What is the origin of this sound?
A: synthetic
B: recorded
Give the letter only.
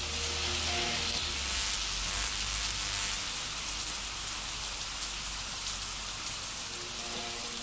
B